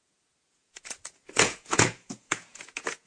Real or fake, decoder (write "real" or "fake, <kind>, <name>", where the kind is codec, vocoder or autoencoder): fake, vocoder, Vocos